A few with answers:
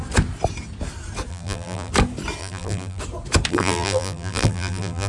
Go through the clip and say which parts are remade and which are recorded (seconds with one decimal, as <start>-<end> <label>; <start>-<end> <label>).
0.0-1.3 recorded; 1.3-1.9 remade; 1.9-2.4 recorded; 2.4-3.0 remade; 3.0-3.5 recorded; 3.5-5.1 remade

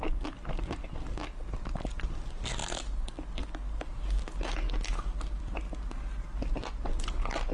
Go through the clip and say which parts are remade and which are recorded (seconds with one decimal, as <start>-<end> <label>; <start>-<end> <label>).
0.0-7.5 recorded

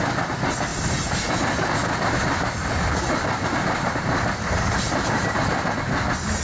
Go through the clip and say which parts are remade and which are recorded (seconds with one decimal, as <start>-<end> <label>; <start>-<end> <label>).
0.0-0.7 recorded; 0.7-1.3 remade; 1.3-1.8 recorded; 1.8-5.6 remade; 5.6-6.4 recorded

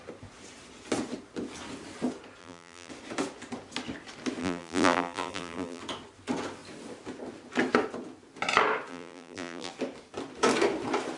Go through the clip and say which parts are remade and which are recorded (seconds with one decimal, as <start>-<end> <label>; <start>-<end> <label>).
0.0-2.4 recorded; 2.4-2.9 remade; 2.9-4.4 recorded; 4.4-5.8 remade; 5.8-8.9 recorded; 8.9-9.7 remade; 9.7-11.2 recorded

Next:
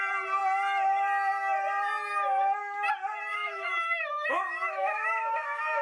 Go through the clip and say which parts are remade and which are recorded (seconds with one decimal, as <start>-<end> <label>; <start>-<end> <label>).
0.0-3.3 recorded; 3.3-5.8 remade